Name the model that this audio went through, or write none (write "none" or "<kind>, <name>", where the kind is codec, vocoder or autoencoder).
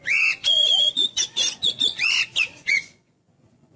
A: vocoder, Vocos